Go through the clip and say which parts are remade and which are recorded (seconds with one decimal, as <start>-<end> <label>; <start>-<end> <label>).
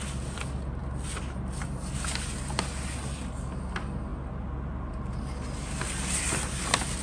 0.0-7.0 recorded